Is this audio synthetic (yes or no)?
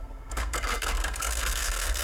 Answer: yes